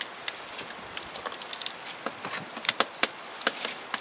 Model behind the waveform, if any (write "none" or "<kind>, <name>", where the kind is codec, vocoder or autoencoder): none